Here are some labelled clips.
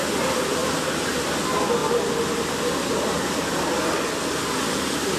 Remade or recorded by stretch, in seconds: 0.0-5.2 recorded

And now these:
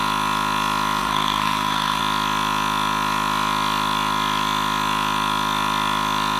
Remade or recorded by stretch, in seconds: 0.0-1.0 recorded; 1.0-2.0 remade; 2.0-6.4 recorded

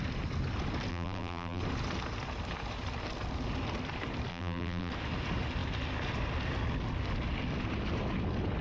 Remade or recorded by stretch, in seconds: 0.0-0.9 recorded; 0.9-1.6 remade; 1.6-4.3 recorded; 4.3-4.9 remade; 4.9-8.6 recorded

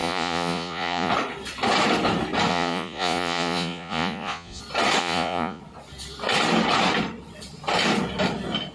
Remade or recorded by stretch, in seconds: 0.0-1.1 remade; 1.1-2.5 recorded; 2.5-4.6 remade; 4.6-5.0 recorded; 5.0-5.6 remade; 5.6-8.7 recorded